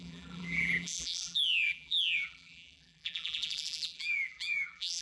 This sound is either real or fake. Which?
fake